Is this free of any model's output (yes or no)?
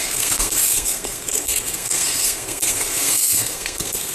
no